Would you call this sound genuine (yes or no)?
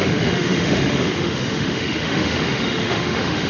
no